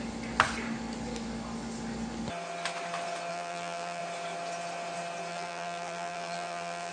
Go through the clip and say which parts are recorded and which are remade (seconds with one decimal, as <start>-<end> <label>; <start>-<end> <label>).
0.0-3.3 recorded; 3.3-4.0 remade; 4.0-5.3 recorded; 5.3-6.9 remade